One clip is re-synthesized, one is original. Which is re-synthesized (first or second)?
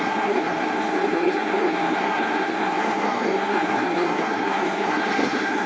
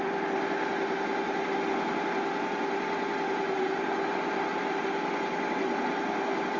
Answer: first